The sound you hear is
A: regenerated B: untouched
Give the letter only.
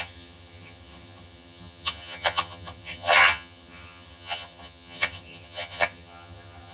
A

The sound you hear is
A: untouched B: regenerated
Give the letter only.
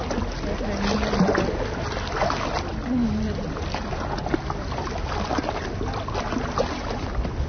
A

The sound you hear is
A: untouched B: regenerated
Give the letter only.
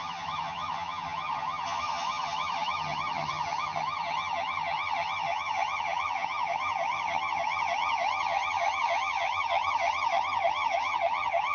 B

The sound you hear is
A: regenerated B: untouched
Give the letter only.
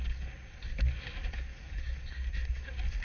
B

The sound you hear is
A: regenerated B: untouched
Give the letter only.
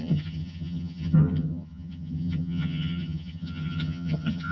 A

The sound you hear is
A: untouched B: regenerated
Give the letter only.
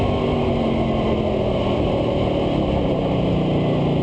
A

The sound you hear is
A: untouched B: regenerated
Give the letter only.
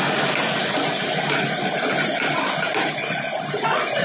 A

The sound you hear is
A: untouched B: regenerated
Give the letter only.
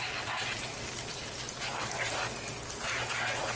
A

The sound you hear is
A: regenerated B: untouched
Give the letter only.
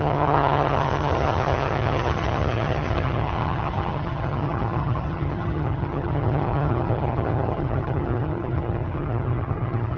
A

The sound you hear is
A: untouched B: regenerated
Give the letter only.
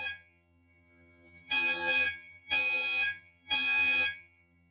B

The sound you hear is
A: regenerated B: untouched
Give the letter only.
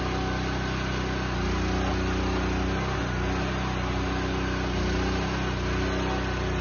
B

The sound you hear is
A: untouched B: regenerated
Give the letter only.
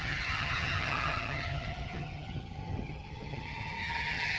B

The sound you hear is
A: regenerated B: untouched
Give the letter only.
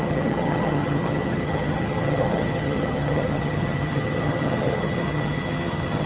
A